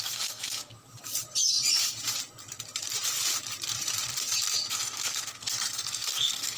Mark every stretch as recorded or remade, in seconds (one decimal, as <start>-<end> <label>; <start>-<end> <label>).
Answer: 0.0-0.7 remade; 0.7-4.7 recorded; 4.7-6.6 remade